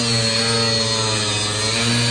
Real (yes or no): yes